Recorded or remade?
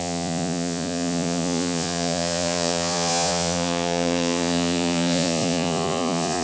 remade